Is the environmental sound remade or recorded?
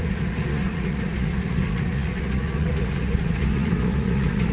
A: remade